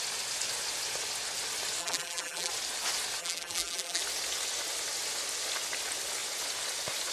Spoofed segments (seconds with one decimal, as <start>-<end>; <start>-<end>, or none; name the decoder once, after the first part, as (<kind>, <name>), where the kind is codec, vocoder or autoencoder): 1.8-2.5 (vocoder, BigVGAN v2); 3.2-4.0